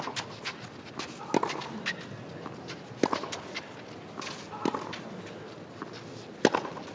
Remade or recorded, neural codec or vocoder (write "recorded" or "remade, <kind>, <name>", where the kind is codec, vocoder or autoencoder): recorded